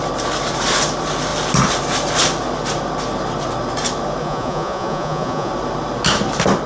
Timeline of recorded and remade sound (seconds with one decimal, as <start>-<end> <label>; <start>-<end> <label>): 0.0-4.2 recorded; 4.2-5.5 remade; 5.5-6.7 recorded